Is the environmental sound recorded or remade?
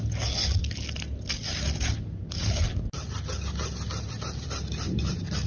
recorded